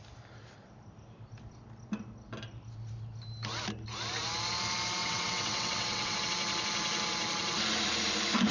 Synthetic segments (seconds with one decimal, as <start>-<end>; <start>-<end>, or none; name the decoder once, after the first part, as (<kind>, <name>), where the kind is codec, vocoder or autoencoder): 5.0-6.2 (vocoder, WaveNeXt)